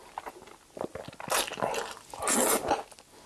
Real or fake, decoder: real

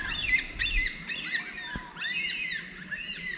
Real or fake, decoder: real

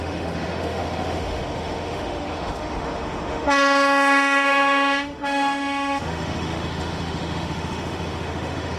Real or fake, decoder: fake, autoencoder, DAC-VAE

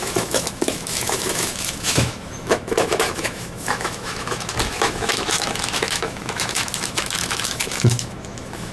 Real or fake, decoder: fake, autoencoder, DAC-VAE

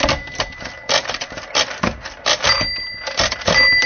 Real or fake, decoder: real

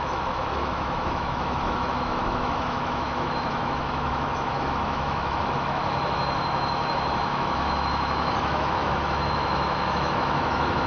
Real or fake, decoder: fake, autoencoder, DAC-VAE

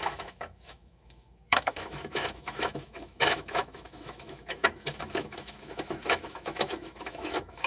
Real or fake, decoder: fake, autoencoder, DAC-VAE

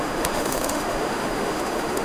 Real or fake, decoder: fake, autoencoder, DAC-VAE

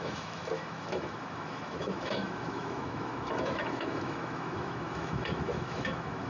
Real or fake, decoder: fake, autoencoder, DAC-VAE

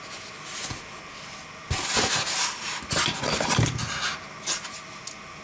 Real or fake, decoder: real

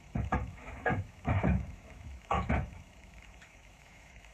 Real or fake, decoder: fake, autoencoder, DAC-VAE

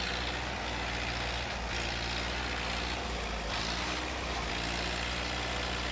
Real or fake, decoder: real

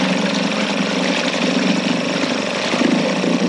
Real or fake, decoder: real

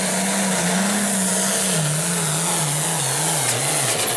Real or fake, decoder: real